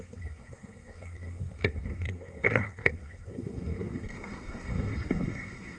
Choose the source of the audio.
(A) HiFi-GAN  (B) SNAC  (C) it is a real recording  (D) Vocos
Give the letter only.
B